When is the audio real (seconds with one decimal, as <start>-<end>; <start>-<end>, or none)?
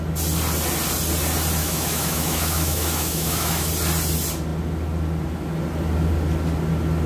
0.0-1.6; 3.7-7.1